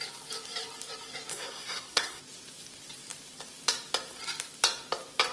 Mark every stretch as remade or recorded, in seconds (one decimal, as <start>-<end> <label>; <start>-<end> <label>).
0.0-1.3 recorded; 1.3-2.2 remade; 2.2-5.3 recorded